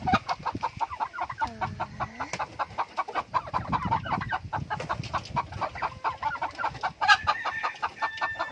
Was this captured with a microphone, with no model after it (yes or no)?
yes